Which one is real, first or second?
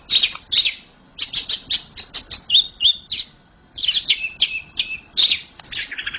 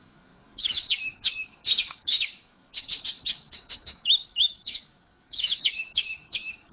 first